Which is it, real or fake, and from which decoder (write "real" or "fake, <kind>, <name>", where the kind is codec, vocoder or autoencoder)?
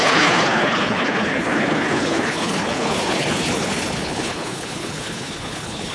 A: fake, codec, HILCodec